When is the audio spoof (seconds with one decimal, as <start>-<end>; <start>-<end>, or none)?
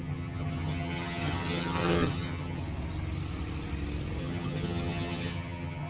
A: 0.0-2.6; 4.2-5.9